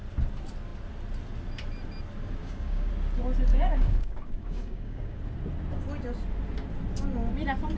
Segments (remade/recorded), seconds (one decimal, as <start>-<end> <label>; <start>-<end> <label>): 0.0-2.4 recorded; 2.4-2.9 remade; 2.9-3.5 recorded; 3.5-5.2 remade; 5.2-7.8 recorded